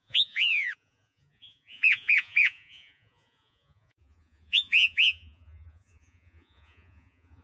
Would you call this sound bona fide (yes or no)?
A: no